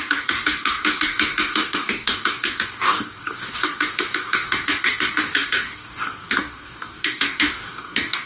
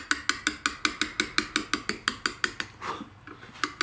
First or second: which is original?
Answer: second